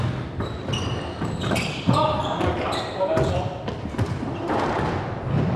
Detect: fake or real real